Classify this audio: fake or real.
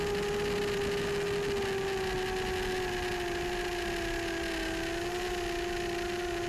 real